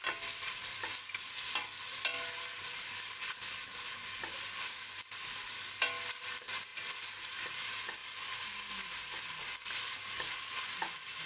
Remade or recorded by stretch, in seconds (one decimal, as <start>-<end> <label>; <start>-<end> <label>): 0.0-11.3 recorded